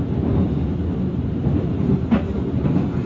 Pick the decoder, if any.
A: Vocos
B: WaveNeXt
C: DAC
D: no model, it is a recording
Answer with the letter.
D